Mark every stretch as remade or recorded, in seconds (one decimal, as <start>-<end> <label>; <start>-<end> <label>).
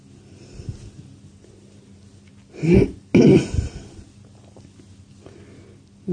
0.0-6.1 recorded